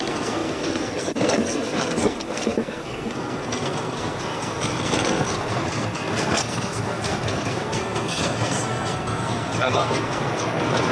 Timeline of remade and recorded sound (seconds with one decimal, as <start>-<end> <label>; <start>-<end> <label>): 0.0-10.9 remade